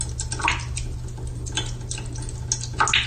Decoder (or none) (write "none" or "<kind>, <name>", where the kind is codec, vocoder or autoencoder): none